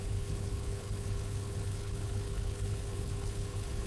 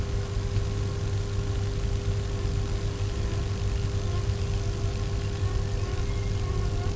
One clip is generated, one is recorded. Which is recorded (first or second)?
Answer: second